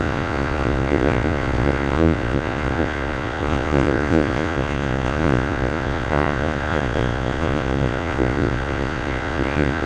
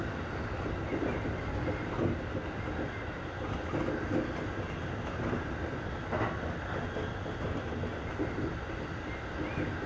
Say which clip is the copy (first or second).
first